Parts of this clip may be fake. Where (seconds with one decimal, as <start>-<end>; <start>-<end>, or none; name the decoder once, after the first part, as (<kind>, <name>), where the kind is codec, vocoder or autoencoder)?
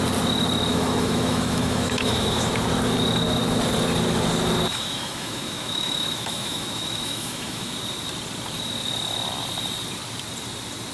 0.7-2.5 (autoencoder, DAC-VAE); 4.7-7.7